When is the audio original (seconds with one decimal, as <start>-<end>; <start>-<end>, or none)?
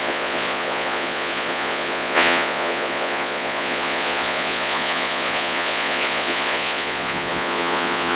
none